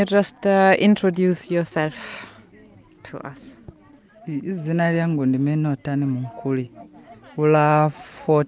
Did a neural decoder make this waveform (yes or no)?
no